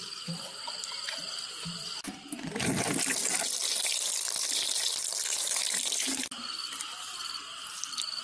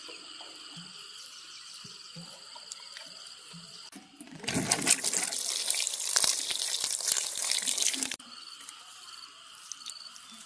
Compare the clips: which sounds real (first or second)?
first